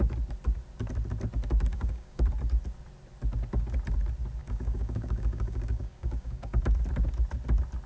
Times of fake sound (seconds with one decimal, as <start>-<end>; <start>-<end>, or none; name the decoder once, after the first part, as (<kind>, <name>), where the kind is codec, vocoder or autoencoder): 1.7-2.2 (codec, DAC); 4.4-6.6